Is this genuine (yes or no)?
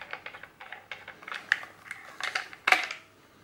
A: yes